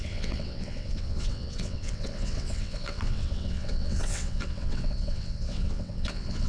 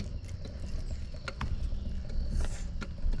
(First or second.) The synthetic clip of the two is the first